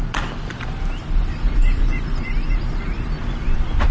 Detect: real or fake real